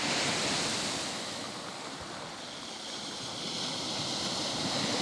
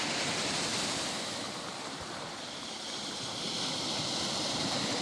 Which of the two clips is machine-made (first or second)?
second